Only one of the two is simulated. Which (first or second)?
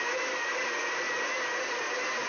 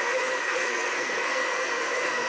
second